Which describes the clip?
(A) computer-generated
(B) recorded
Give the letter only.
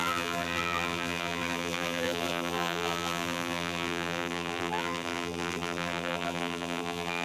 A